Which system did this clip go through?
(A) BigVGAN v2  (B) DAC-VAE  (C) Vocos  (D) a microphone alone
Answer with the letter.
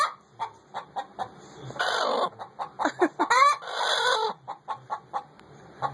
D